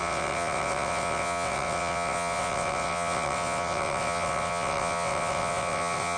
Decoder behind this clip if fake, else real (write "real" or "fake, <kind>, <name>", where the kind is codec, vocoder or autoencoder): fake, vocoder, WaveNeXt